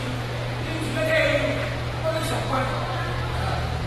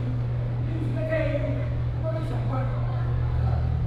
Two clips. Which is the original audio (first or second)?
first